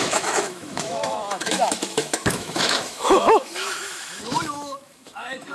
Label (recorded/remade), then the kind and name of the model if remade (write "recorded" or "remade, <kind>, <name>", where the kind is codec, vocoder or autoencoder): remade, autoencoder, DAC-VAE